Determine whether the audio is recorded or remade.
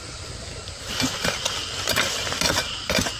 recorded